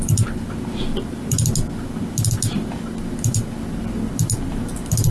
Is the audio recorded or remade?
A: recorded